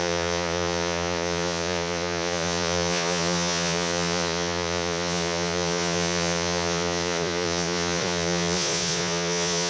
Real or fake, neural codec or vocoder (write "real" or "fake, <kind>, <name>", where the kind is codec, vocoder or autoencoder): fake, vocoder, Vocos